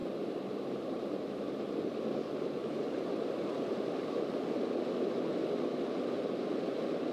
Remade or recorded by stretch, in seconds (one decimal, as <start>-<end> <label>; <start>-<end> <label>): 0.0-1.7 remade; 1.7-2.6 recorded; 2.6-4.4 remade; 4.4-7.1 recorded